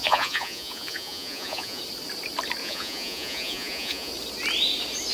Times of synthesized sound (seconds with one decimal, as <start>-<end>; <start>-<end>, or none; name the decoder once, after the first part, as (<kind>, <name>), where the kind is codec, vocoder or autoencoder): 0.0-1.8 (vocoder, Vocos); 2.6-4.1